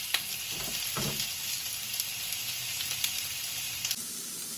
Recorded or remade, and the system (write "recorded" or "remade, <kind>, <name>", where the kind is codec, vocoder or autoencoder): recorded